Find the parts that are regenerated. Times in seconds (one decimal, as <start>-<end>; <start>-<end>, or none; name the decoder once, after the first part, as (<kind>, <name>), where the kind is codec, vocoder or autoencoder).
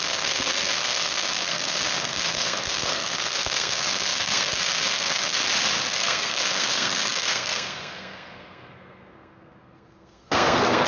0.0-5.4 (codec, SNAC); 5.9-10.9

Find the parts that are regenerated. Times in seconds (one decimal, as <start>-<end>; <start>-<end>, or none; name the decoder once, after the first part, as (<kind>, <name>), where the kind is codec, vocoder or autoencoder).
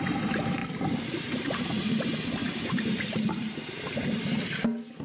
0.6-2.0 (vocoder, BigVGAN v2); 2.4-4.0